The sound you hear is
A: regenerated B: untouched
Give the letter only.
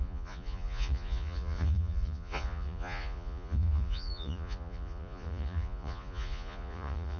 A